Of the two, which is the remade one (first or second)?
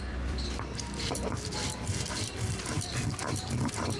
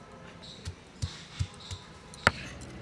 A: first